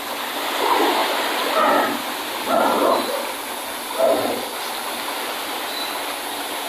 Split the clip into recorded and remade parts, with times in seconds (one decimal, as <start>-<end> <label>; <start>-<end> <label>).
0.0-6.7 recorded